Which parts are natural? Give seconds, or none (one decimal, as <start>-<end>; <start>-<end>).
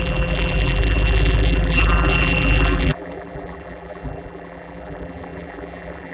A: none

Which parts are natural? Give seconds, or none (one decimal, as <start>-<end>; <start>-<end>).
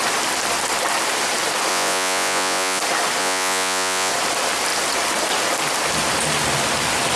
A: 0.0-1.7; 2.8-3.2; 4.1-7.2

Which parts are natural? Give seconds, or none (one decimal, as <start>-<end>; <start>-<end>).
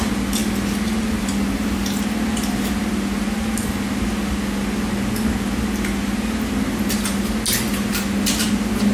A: 0.0-8.9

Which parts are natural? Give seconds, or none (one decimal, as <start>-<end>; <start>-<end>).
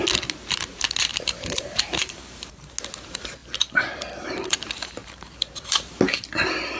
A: 0.0-1.1; 2.7-3.4; 4.6-5.0; 6.0-6.8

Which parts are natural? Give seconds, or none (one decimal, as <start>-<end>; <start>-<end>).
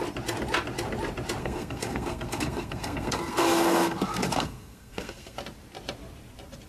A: 0.0-1.4; 5.4-6.7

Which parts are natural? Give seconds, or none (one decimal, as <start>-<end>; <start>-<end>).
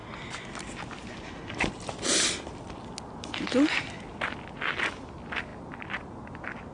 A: 0.0-6.7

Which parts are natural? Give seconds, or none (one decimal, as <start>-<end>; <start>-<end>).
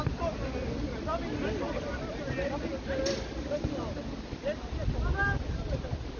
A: 0.0-6.2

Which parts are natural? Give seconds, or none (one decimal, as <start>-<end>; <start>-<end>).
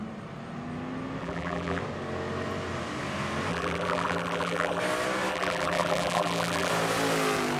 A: 0.0-1.2; 1.8-3.5; 4.8-5.3; 6.7-7.6